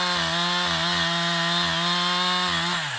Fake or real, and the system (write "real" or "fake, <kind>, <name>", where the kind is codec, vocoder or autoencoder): real